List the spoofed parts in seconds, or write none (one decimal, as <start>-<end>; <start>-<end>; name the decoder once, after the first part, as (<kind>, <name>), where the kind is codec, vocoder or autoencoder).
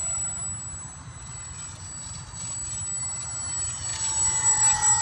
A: none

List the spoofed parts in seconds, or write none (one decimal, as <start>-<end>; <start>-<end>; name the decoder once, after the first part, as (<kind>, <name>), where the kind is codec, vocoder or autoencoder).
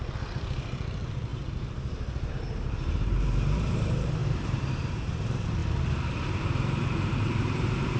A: 0.0-5.6 (vocoder, BigVGAN v2); 6.3-8.0